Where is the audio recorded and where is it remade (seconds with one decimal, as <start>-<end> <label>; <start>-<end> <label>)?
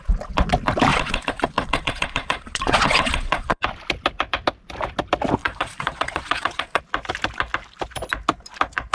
0.0-0.9 recorded; 0.9-3.6 remade; 3.6-5.4 recorded; 5.4-6.8 remade; 6.8-8.9 recorded